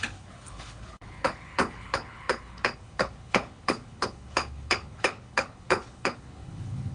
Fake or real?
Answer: fake